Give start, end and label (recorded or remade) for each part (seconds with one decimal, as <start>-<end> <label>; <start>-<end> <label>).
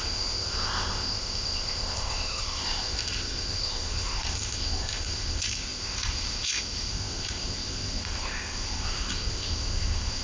0.0-10.2 remade